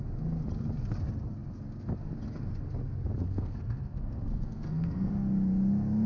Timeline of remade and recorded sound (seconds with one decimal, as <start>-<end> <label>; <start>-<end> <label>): 0.0-3.2 recorded; 3.2-5.1 remade; 5.1-6.1 recorded